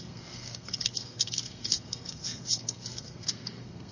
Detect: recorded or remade remade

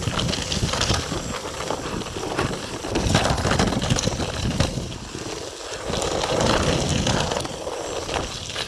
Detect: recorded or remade recorded